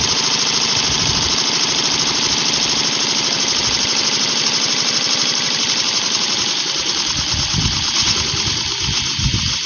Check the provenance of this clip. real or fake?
real